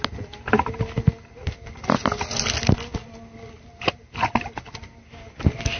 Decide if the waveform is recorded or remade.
recorded